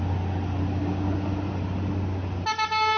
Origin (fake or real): real